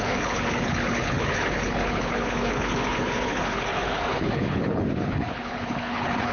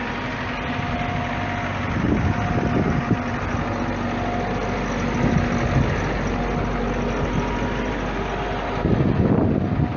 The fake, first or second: first